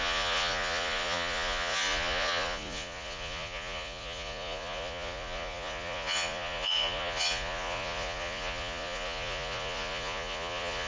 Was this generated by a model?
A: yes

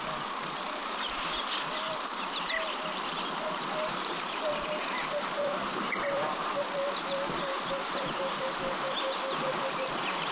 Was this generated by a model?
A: yes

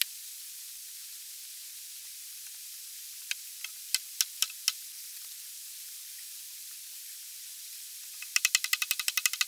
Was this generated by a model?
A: no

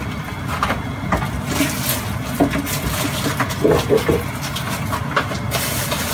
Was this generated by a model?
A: no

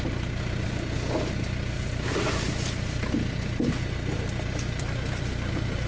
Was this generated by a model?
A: no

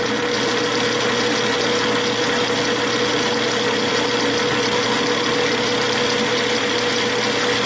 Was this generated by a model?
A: no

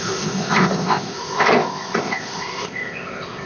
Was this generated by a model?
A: yes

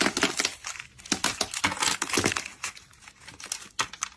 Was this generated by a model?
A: no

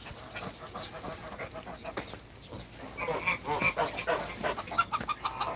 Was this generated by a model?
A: no